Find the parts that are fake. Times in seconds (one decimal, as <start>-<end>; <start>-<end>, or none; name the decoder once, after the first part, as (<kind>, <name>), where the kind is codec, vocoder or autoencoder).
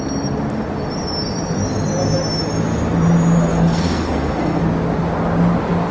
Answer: 3.5-4.6 (codec, SNAC)